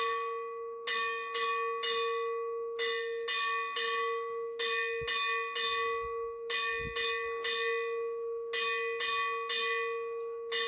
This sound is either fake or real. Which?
real